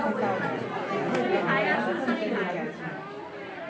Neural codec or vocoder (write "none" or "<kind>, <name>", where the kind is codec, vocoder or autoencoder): none